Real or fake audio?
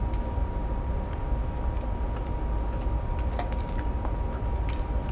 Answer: real